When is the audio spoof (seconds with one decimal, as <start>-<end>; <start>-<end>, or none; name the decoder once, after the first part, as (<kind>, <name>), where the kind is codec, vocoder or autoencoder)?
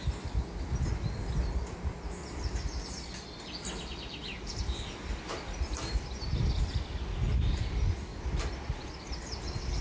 0.0-2.2 (vocoder, BigVGAN v2); 5.3-7.1; 7.6-9.8